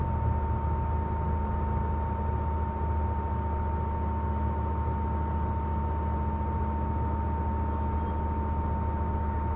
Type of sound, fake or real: real